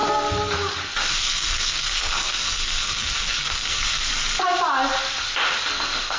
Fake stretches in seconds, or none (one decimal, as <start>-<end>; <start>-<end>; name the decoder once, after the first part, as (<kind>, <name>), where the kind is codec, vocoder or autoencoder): 1.1-4.1 (codec, SNAC); 5.7-6.2